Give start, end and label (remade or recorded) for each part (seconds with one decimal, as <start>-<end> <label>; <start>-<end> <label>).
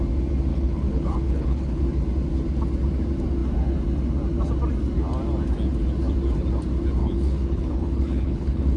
0.0-0.5 recorded; 0.5-1.8 remade; 1.8-7.0 recorded; 7.0-8.8 remade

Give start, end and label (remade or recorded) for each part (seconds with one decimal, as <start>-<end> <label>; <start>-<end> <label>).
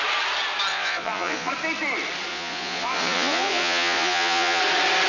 0.0-0.7 recorded; 0.7-1.5 remade; 1.5-2.3 recorded; 2.3-4.6 remade; 4.6-5.1 recorded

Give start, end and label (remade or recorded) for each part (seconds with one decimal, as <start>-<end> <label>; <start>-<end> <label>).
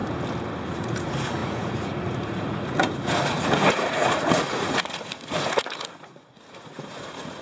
0.0-0.7 recorded; 0.7-7.4 remade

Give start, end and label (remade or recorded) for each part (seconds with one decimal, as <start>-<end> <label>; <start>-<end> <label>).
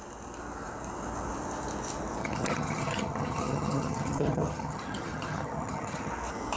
0.0-2.2 recorded; 2.2-6.1 remade; 6.1-6.6 recorded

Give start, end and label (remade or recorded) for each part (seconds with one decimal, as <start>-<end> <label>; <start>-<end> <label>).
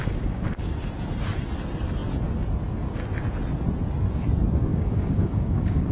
0.0-0.7 remade; 0.7-4.7 recorded; 4.7-5.9 remade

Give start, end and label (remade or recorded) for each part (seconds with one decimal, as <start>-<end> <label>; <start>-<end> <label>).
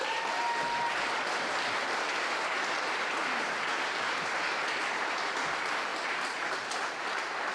0.0-5.9 recorded; 5.9-6.9 remade; 6.9-7.5 recorded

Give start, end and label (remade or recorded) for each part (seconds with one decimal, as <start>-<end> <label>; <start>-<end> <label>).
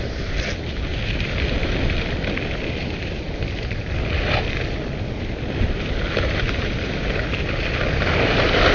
0.0-8.7 recorded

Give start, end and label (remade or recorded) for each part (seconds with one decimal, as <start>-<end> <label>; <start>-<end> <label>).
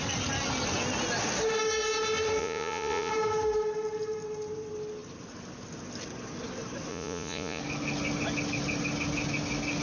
0.0-2.4 recorded; 2.4-3.1 remade; 3.1-6.9 recorded; 6.9-7.6 remade; 7.6-9.8 recorded